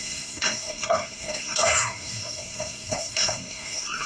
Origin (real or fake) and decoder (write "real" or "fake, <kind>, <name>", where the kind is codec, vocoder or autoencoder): fake, codec, SNAC